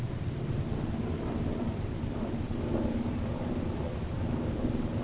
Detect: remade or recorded remade